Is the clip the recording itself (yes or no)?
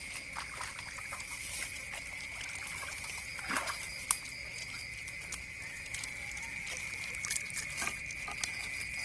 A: yes